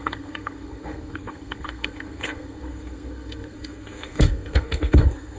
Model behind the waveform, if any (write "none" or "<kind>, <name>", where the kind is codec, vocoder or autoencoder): codec, SNAC